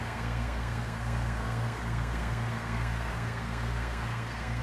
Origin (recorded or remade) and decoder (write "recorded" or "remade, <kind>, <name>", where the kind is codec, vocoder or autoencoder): remade, codec, SNAC